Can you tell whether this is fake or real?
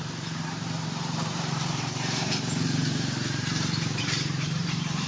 fake